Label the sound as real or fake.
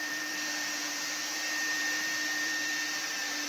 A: fake